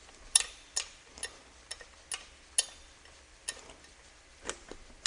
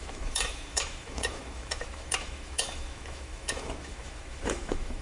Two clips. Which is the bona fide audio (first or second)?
first